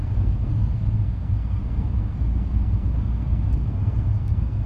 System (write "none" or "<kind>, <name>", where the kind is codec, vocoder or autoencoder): codec, SNAC